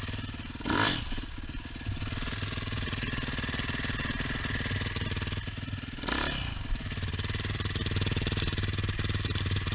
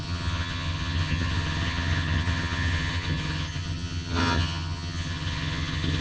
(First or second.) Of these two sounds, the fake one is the second